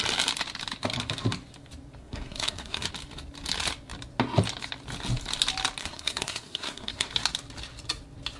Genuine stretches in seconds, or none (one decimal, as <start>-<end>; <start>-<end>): 0.0-2.0; 2.9-5.8; 7.1-8.4

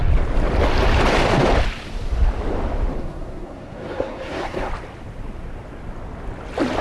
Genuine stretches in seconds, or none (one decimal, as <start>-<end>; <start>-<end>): 0.0-3.0; 4.7-6.8

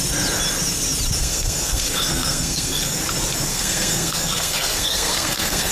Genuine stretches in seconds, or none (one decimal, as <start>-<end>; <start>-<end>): 0.0-1.2; 3.0-3.5

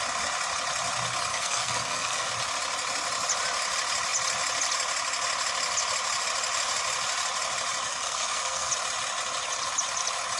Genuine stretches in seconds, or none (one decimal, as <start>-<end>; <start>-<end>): 0.0-1.3; 2.3-7.9; 8.7-10.4

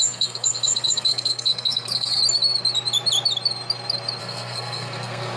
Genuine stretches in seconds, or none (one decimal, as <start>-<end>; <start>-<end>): 2.2-4.2